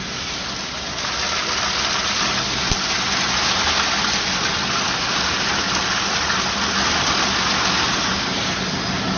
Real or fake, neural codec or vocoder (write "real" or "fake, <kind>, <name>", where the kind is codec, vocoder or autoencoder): real